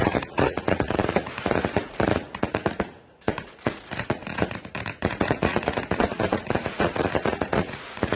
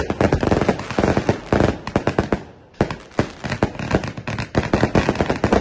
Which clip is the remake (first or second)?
first